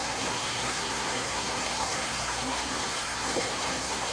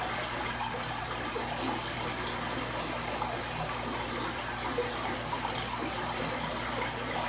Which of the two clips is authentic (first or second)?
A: second